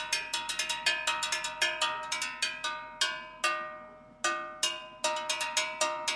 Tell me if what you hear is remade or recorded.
recorded